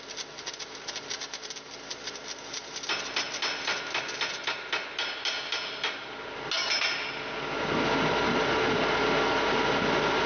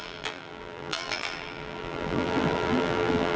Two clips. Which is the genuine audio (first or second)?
first